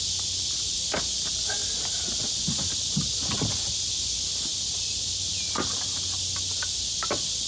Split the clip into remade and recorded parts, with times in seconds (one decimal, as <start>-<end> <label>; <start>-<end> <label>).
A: 0.0-7.5 recorded